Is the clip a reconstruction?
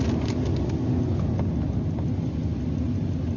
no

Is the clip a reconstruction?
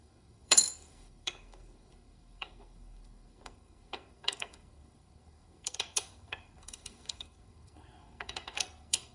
yes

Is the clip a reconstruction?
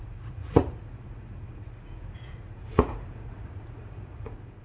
yes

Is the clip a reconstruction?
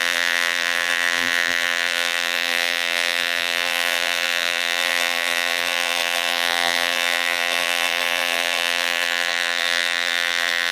yes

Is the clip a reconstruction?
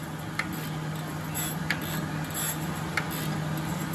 no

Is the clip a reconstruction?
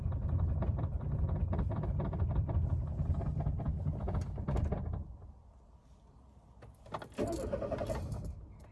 no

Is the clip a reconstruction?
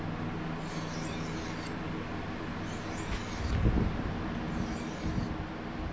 no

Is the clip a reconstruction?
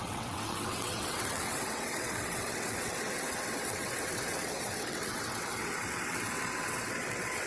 yes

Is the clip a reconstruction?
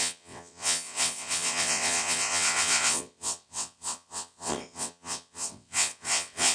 yes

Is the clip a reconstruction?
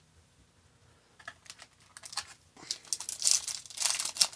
no